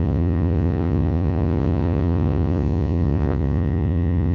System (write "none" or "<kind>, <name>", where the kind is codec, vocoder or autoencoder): vocoder, Vocos